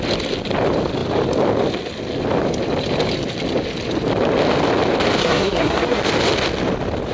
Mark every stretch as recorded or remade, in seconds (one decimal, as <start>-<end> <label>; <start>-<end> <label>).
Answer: 0.0-5.2 recorded; 5.2-6.0 remade; 6.0-7.1 recorded

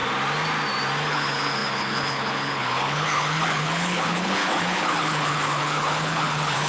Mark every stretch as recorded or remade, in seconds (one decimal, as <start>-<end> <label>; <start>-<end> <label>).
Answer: 0.0-1.1 recorded; 1.1-6.7 remade